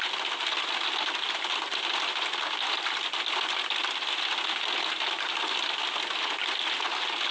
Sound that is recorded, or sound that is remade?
recorded